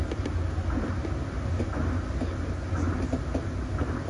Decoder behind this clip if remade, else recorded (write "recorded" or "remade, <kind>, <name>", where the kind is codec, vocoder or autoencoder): recorded